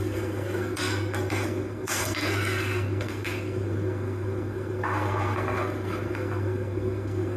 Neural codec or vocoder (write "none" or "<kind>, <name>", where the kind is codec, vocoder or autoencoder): codec, SNAC